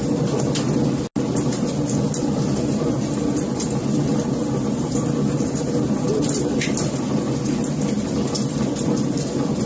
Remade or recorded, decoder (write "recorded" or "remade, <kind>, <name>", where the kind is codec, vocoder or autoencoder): recorded